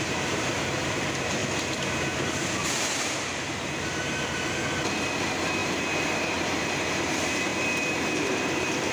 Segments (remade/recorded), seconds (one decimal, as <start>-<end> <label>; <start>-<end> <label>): 0.0-1.4 remade; 1.4-2.3 recorded; 2.3-3.3 remade; 3.3-4.8 recorded; 4.8-8.9 remade